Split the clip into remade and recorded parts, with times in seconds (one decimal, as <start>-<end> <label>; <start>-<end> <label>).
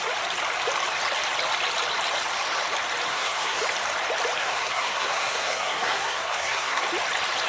0.0-3.1 recorded; 3.1-3.6 remade; 3.6-4.4 recorded; 4.4-6.8 remade; 6.8-7.5 recorded